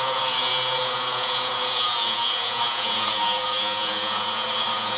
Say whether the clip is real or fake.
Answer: fake